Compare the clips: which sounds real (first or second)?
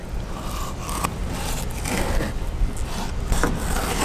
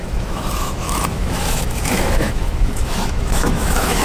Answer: first